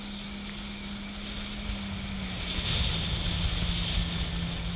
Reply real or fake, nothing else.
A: real